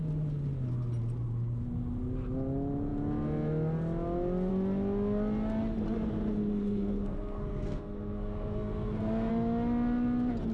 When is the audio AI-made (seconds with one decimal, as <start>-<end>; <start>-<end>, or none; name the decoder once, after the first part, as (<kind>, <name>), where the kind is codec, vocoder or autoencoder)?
6.5-9.3 (codec, SNAC)

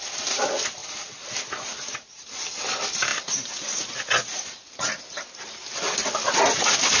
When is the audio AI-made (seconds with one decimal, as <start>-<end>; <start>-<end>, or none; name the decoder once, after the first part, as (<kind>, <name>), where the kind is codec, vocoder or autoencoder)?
none

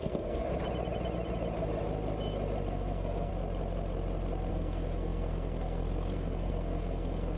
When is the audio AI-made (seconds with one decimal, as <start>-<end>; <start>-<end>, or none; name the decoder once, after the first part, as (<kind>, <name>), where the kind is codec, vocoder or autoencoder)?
0.0-0.4 (codec, SNAC); 2.7-3.3; 4.5-7.4

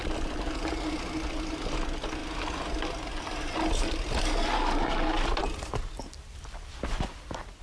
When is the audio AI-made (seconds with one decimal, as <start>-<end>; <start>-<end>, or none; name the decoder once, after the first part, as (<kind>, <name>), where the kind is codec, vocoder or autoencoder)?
none

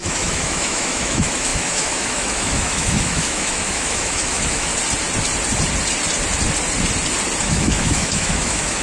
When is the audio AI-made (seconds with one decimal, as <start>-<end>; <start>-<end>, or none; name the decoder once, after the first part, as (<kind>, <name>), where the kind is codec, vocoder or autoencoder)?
0.0-4.7 (autoencoder, DAC-VAE); 7.4-8.8

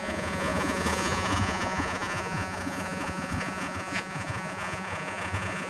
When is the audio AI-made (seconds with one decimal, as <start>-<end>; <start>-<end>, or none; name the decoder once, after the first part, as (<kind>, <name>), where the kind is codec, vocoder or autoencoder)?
0.0-5.7 (vocoder, Vocos)

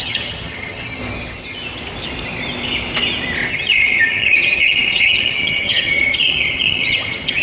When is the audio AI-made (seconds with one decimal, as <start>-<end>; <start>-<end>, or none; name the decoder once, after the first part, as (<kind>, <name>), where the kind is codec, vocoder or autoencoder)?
0.0-1.0 (vocoder, HiFi-GAN); 3.5-7.4

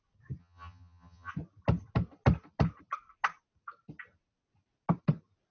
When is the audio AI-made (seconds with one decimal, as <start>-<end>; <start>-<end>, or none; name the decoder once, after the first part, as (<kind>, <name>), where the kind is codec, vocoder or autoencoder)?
0.4-1.3 (vocoder, HiFi-GAN)